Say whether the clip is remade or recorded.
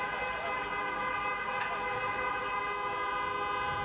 recorded